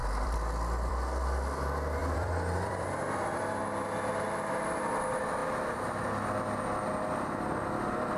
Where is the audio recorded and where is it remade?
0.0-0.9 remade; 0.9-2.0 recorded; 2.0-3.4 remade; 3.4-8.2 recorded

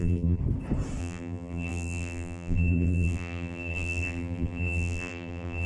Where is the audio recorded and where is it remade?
0.0-0.4 remade; 0.4-1.0 recorded; 1.0-5.7 remade

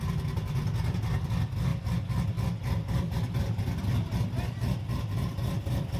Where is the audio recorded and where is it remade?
0.0-6.0 recorded

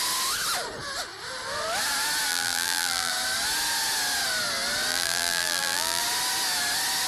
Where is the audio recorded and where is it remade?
0.0-2.3 recorded; 2.3-3.1 remade; 3.1-4.9 recorded; 4.9-6.0 remade; 6.0-7.1 recorded

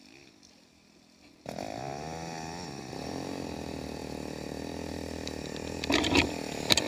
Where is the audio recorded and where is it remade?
0.0-6.9 recorded

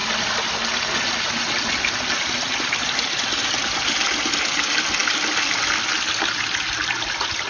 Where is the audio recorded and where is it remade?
0.0-7.5 recorded